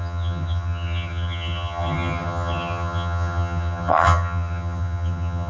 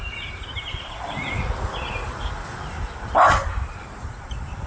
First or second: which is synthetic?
first